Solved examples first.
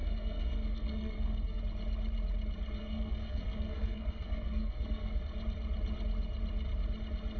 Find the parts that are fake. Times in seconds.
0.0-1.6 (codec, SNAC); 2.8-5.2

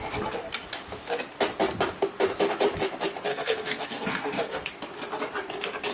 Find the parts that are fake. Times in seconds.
3.3-4.7 (codec, SNAC)

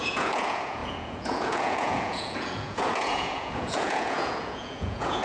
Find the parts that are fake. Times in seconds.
0.0-5.2 (vocoder, Vocos)

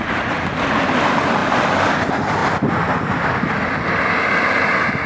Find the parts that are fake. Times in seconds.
1.4-2.0 (vocoder, BigVGAN v2); 2.4-3.5

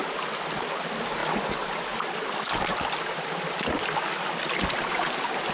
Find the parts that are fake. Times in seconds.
none

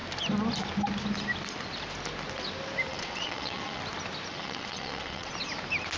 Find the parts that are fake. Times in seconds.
2.9-3.8 (vocoder, WaveNeXt); 4.3-5.3

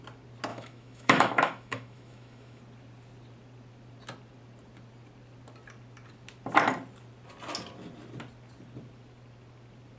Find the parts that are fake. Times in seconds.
0.5-2.6 (autoencoder, DAC-VAE)

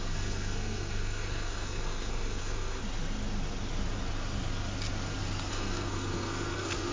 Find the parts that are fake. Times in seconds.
0.0-2.8 (codec, SNAC); 5.5-6.9